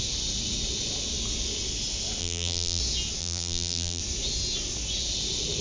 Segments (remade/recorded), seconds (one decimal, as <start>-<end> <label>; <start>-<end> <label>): 0.0-2.2 recorded; 2.2-2.8 remade; 2.8-3.2 recorded; 3.2-4.0 remade; 4.0-5.6 recorded